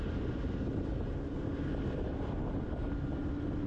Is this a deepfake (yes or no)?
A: no